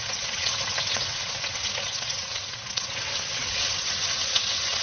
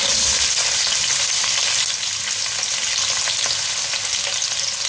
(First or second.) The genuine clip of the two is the second